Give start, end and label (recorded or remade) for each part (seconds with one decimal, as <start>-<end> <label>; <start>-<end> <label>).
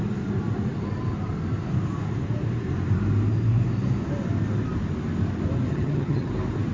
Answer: 0.0-5.7 recorded; 5.7-6.3 remade; 6.3-6.7 recorded